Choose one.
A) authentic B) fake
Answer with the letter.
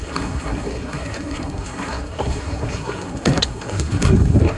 B